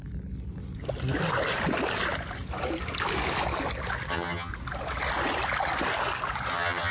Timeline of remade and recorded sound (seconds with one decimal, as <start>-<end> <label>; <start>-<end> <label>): 0.0-4.1 recorded; 4.1-4.5 remade; 4.5-6.5 recorded; 6.5-6.9 remade